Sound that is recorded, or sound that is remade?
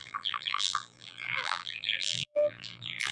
remade